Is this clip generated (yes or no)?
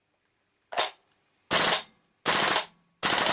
no